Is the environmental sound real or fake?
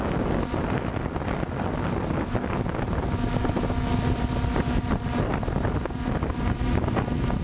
real